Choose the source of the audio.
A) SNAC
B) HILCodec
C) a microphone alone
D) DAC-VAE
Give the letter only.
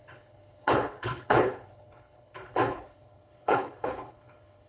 B